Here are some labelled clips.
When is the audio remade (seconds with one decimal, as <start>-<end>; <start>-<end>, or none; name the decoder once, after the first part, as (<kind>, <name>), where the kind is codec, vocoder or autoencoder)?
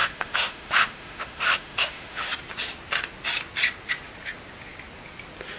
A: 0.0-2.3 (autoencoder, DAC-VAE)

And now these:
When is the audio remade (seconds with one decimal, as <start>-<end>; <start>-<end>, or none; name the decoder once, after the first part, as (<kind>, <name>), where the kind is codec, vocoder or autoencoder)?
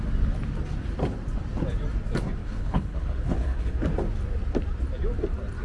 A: 2.4-3.7 (codec, HILCodec)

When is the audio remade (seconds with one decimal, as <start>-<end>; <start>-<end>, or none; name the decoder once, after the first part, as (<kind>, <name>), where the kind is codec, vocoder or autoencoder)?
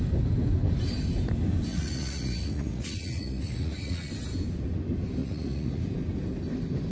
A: 1.7-4.1 (vocoder, Vocos); 5.2-5.8